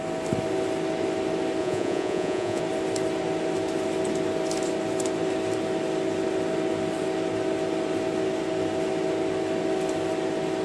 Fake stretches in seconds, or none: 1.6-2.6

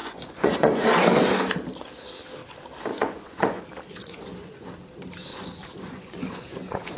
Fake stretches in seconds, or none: 0.0-0.9; 2.9-3.6; 4.0-4.7; 5.3-7.0

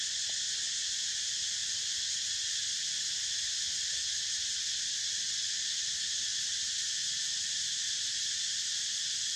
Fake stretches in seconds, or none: none

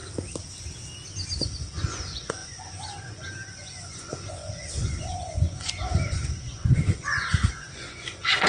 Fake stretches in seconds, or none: 1.4-8.5

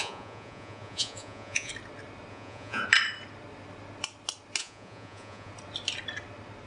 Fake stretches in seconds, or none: 0.0-1.7; 2.3-2.8; 4.6-5.5

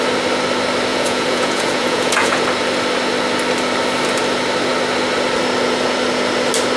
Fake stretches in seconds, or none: 0.9-2.4